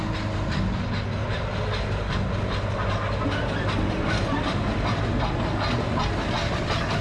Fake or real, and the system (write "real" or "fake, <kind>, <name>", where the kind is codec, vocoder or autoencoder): real